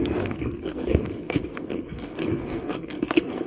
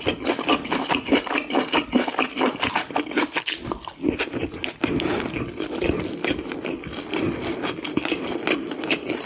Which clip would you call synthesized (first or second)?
first